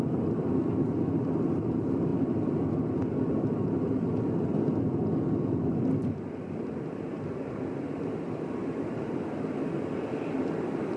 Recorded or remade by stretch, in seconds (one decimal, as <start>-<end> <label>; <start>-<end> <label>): 0.0-7.1 recorded; 7.1-9.5 remade; 9.5-11.0 recorded

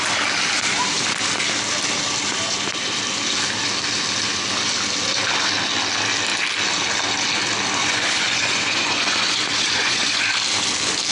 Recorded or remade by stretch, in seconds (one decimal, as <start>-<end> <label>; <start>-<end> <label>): 0.0-7.8 recorded; 7.8-10.2 remade; 10.2-11.1 recorded

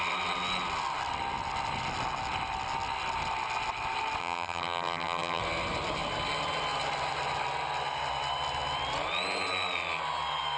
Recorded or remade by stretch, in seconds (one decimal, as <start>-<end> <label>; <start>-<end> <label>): 0.0-4.2 recorded; 4.2-5.4 remade; 5.4-10.6 recorded

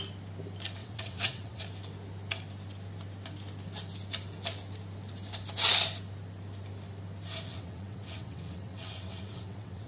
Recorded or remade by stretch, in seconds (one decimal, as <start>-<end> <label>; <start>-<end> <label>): 0.0-0.8 recorded; 0.8-1.6 remade; 1.6-7.5 recorded; 7.5-9.9 remade